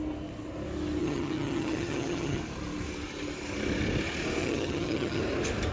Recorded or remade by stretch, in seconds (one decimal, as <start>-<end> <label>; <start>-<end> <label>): 0.0-1.0 recorded; 1.0-2.4 remade; 2.4-4.4 recorded; 4.4-5.2 remade; 5.2-5.7 recorded